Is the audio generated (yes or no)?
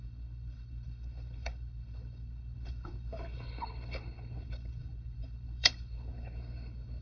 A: yes